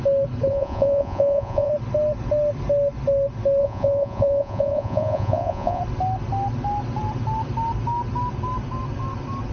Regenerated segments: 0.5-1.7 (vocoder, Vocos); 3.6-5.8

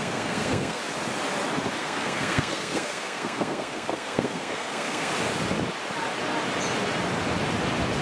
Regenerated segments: 0.0-0.8 (codec, SNAC); 1.8-5.1

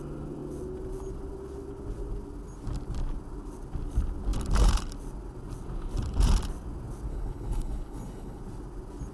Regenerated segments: 7.1-8.4 (codec, HILCodec)

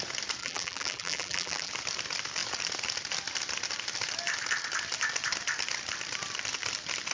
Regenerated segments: 0.4-1.7 (vocoder, BigVGAN v2)

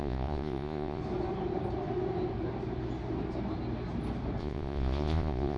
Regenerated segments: 0.0-1.0 (vocoder, Vocos); 4.4-5.6

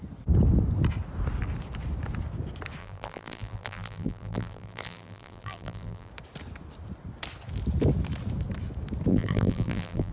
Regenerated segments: 2.8-6.1 (vocoder, BigVGAN v2); 9.1-10.1

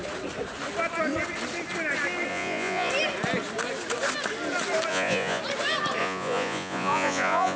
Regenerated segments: 2.3-2.9 (vocoder, Vocos); 4.9-5.4; 6.0-7.6